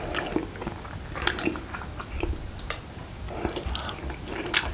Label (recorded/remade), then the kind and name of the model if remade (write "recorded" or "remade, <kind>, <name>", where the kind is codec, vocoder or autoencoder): recorded